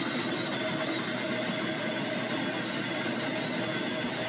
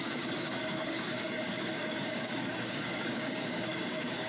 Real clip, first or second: first